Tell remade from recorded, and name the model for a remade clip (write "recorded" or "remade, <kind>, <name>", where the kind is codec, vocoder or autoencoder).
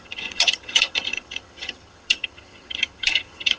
remade, vocoder, HiFi-GAN